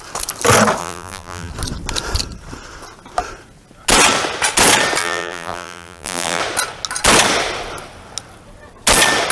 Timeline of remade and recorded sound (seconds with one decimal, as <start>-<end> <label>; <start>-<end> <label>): 0.0-0.8 recorded; 0.8-1.5 remade; 1.5-5.0 recorded; 5.0-6.4 remade; 6.4-9.3 recorded